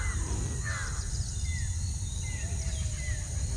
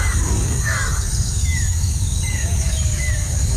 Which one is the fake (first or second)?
second